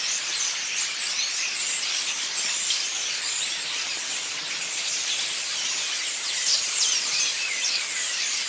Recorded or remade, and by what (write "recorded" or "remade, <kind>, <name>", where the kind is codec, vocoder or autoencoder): remade, vocoder, BigVGAN v2